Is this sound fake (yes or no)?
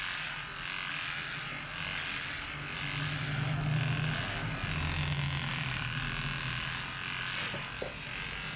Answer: no